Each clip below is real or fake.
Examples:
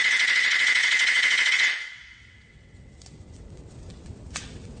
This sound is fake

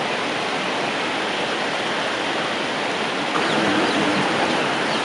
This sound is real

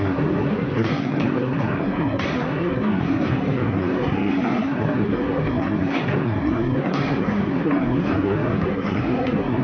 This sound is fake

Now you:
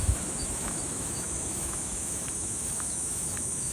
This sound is fake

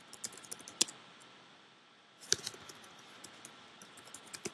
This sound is real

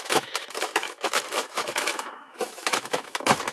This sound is fake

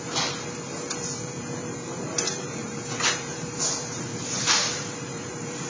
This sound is fake